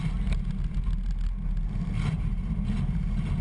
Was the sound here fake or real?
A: real